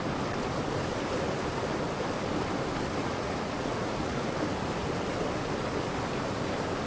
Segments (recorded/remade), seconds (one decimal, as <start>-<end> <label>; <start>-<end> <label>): 0.0-3.0 recorded; 3.0-4.3 remade; 4.3-6.9 recorded